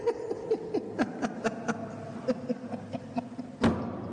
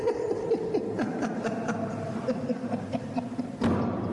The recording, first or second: first